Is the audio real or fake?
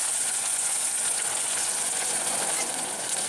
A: fake